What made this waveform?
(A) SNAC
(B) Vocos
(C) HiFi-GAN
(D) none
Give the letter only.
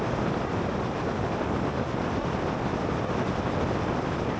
D